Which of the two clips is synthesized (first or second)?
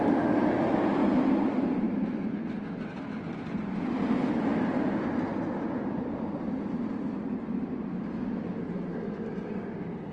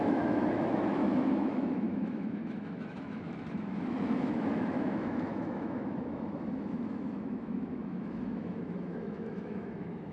second